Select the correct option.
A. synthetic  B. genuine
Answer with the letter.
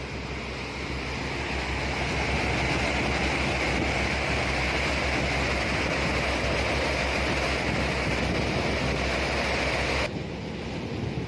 B